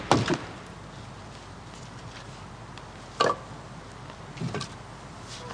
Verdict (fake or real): real